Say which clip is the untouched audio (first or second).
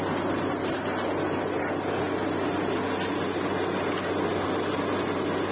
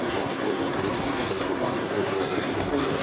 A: first